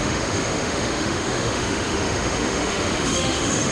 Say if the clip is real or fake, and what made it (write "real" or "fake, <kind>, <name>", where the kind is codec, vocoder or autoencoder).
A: fake, autoencoder, DAC-VAE